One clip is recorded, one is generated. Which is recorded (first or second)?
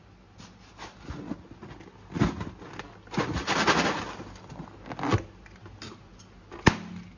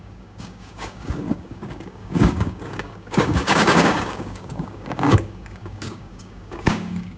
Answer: first